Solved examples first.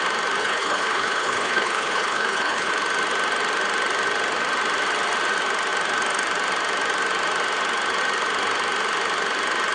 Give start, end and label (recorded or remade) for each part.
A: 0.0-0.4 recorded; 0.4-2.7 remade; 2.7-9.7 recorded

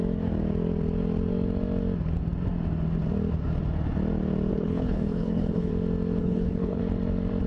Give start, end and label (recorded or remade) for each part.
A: 0.0-4.5 recorded; 4.5-5.7 remade; 5.7-6.2 recorded; 6.2-6.8 remade; 6.8-7.5 recorded